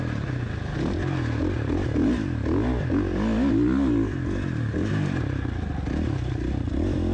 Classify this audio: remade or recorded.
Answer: recorded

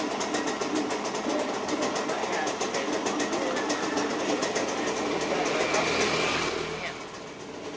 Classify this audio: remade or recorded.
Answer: recorded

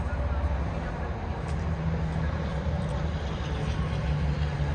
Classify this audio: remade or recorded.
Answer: recorded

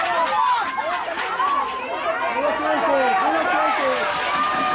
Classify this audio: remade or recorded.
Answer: recorded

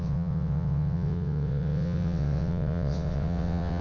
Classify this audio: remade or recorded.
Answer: remade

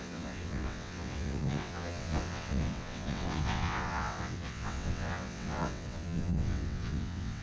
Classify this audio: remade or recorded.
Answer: remade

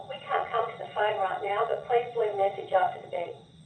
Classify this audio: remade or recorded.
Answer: remade